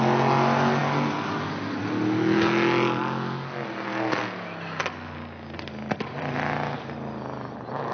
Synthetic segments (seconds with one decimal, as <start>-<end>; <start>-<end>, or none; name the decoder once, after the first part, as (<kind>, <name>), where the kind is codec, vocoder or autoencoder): none